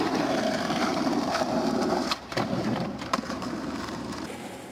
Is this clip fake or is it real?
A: fake